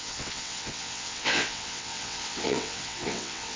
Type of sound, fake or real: fake